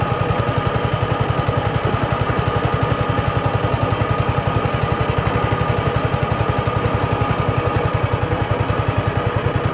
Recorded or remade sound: recorded